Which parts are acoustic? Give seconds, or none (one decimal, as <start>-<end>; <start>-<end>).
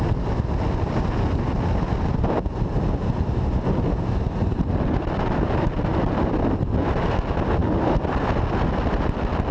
0.0-9.5